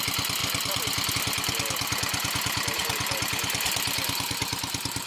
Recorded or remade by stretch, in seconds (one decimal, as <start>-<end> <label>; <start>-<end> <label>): 0.0-5.1 recorded